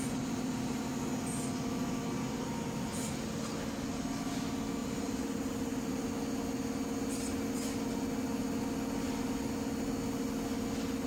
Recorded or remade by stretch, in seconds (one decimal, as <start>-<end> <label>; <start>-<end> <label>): 0.0-0.8 remade; 0.8-4.8 recorded; 4.8-6.1 remade; 6.1-11.1 recorded